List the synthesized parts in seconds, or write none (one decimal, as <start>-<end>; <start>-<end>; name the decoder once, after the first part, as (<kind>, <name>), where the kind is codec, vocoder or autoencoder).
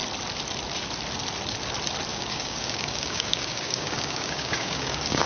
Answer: 2.1-5.3 (codec, DAC)